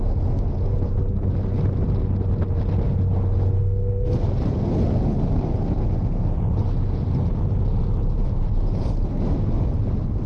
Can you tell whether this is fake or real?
real